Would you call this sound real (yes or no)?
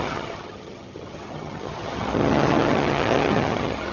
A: no